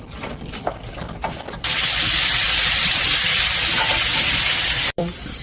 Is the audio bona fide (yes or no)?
no